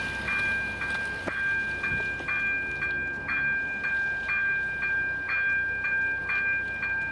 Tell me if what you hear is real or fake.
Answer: real